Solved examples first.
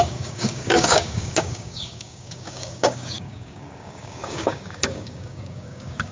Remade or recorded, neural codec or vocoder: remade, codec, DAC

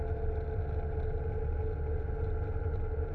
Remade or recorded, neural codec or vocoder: recorded